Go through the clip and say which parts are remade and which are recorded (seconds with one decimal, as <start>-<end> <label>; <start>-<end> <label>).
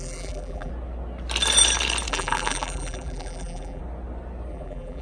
0.0-0.7 remade; 0.7-2.1 recorded; 2.1-3.8 remade; 3.8-4.5 recorded; 4.5-5.0 remade